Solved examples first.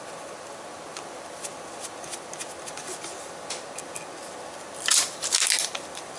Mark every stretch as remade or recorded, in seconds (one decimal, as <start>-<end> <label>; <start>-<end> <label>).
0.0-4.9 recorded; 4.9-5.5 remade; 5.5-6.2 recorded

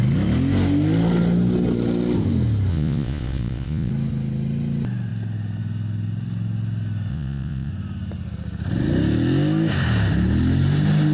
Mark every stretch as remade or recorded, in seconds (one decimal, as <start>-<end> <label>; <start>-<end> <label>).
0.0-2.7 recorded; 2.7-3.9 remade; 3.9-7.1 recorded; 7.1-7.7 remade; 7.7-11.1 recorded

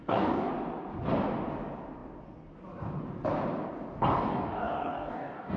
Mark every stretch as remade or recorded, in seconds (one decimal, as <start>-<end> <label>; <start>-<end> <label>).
0.0-0.5 remade; 0.5-4.3 recorded; 4.3-5.6 remade